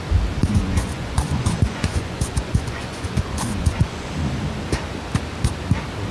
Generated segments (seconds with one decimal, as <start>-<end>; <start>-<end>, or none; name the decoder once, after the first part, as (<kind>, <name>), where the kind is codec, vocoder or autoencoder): 0.4-4.1 (vocoder, Vocos)